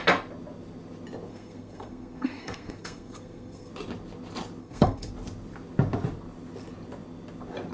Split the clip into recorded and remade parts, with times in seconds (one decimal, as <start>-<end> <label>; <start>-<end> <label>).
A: 0.0-1.3 recorded; 1.3-3.7 remade; 3.7-4.6 recorded; 4.6-5.1 remade; 5.1-7.7 recorded